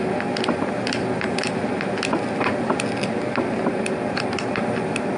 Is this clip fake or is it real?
real